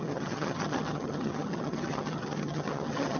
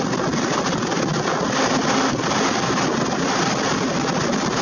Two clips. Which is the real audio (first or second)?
second